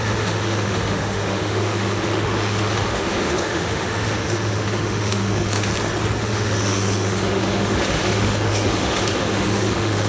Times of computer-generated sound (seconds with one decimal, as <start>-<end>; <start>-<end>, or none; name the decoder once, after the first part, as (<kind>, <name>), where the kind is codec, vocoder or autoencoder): 0.0-5.7 (autoencoder, DAC-VAE); 6.2-10.1